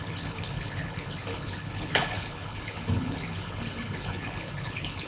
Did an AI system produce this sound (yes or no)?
yes